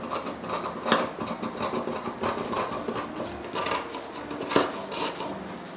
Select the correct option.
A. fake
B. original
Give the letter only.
B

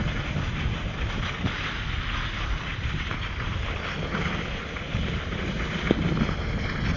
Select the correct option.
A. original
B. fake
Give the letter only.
A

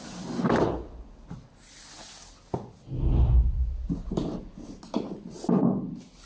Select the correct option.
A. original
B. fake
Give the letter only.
A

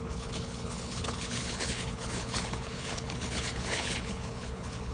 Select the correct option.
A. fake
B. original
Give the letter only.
A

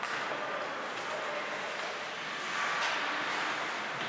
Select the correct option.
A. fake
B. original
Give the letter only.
B